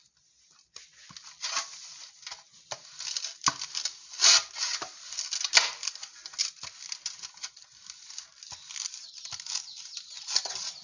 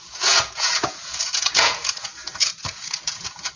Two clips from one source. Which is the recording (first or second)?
first